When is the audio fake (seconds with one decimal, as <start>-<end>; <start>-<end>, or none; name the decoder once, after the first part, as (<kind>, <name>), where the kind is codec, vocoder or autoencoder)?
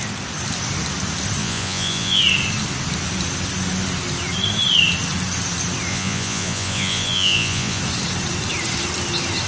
1.4-2.2 (vocoder, Vocos); 5.9-7.8